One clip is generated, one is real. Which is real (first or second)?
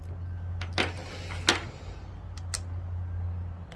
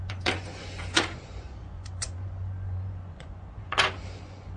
first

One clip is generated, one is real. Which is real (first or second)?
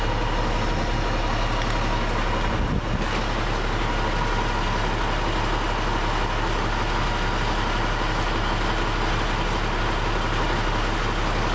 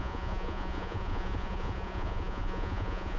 first